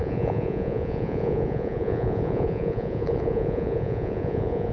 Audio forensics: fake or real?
fake